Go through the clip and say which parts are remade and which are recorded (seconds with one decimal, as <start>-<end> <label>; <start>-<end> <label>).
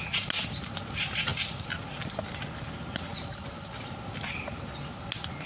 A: 0.0-1.3 recorded; 1.3-2.0 remade; 2.0-3.1 recorded; 3.1-4.1 remade; 4.1-5.5 recorded